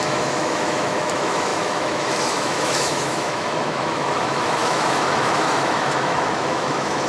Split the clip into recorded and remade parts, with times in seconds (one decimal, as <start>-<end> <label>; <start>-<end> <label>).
0.0-7.1 remade